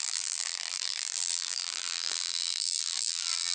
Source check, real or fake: fake